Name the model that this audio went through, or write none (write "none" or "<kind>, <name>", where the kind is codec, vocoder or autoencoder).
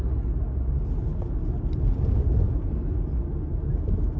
none